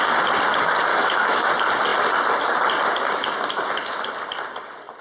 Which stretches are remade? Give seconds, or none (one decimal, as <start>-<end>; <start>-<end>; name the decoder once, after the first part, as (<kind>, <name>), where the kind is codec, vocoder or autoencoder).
0.9-1.5 (autoencoder, DAC-VAE)